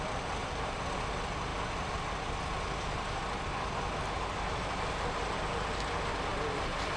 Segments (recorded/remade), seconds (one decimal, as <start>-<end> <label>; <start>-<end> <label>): 0.0-0.4 recorded; 0.4-1.1 remade; 1.1-7.0 recorded